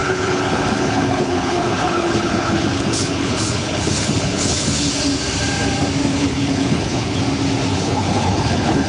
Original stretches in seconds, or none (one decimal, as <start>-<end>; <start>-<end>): 4.9-6.1; 7.2-7.7